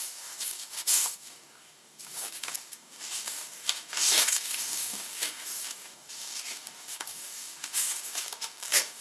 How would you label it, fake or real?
fake